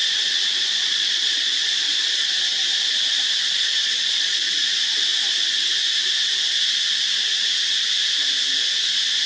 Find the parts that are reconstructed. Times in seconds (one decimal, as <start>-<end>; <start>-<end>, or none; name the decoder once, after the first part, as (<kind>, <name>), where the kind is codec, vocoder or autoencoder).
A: 0.0-2.3 (vocoder, Vocos); 3.4-4.6